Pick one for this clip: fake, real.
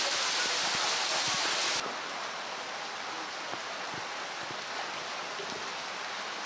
real